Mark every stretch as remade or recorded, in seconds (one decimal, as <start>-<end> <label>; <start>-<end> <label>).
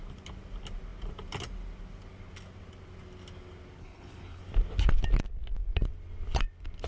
0.0-3.8 recorded; 3.8-4.4 remade; 4.4-6.9 recorded